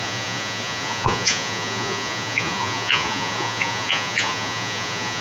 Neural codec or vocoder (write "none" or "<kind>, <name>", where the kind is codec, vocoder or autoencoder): vocoder, Vocos